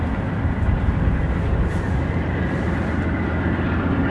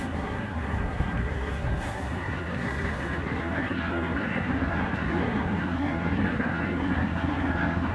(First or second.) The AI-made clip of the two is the second